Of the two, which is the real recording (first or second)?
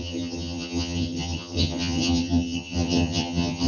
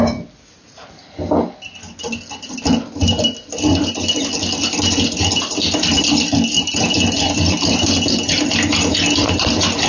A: second